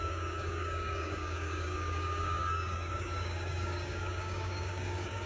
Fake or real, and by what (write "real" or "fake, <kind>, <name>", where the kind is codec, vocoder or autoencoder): fake, codec, DAC